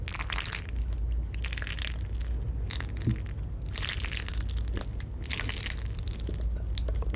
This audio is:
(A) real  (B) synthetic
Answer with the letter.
A